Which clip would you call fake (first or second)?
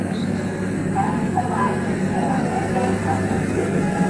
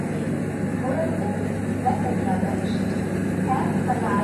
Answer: first